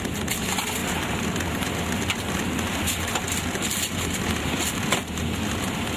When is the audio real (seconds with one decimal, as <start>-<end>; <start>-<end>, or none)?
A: 0.0-6.0